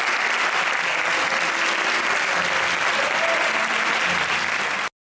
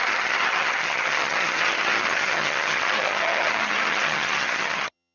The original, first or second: first